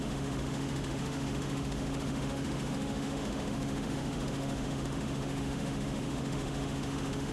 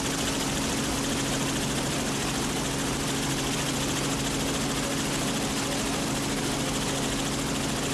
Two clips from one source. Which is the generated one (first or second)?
first